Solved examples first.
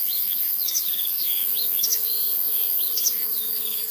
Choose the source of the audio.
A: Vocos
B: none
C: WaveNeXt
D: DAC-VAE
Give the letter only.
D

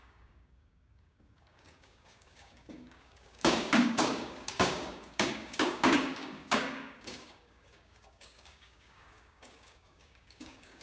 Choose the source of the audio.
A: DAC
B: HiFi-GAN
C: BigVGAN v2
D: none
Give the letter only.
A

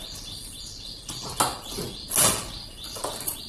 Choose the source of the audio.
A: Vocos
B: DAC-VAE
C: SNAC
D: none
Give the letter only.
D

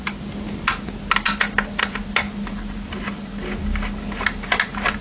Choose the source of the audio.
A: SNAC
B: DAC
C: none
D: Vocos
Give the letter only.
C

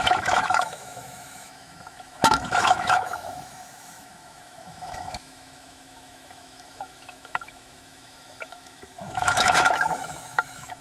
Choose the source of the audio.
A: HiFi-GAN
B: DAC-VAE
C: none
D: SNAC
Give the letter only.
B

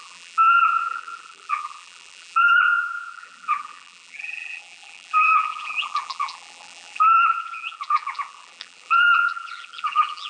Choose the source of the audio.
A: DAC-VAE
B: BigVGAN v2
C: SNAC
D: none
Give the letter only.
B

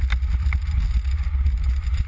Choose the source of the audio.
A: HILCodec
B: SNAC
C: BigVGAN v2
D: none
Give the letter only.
D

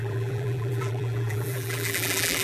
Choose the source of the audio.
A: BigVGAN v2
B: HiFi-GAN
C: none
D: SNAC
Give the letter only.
A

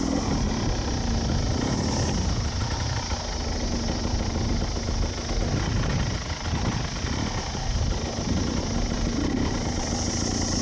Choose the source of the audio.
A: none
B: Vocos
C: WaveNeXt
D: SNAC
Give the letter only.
A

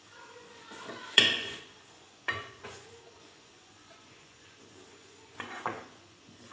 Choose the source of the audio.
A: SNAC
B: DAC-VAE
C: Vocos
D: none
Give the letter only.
C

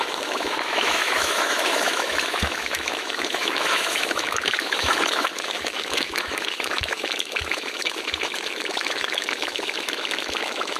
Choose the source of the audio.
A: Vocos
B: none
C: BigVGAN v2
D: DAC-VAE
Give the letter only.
D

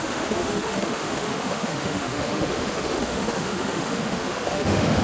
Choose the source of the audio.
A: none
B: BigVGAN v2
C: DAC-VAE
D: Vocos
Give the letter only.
C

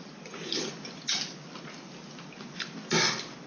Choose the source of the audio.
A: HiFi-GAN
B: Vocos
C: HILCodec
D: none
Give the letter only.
D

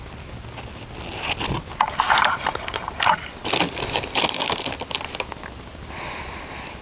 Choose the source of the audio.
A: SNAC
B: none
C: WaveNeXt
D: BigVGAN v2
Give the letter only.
B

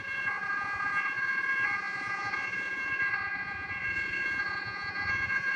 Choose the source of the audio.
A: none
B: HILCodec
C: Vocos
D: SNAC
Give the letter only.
C